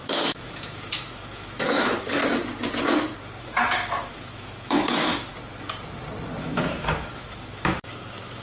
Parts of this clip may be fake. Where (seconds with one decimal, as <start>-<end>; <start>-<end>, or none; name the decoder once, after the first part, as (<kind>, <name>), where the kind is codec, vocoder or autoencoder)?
0.0-2.2 (autoencoder, DAC-VAE); 3.4-5.3; 6.4-8.4